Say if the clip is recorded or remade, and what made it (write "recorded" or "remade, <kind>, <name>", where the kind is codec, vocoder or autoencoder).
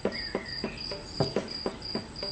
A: recorded